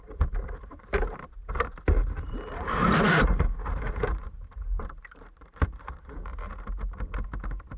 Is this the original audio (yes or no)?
no